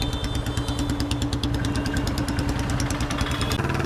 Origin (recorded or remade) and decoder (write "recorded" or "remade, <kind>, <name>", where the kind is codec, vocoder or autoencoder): recorded